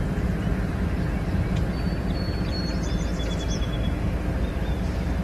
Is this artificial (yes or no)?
no